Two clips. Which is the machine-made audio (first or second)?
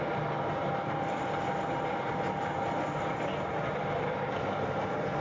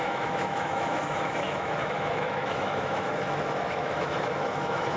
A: second